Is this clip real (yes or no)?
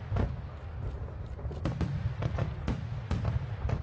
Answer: yes